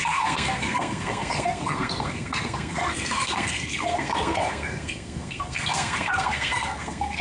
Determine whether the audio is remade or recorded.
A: remade